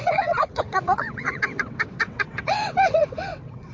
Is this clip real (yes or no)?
no